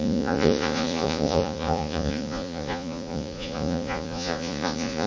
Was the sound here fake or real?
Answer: fake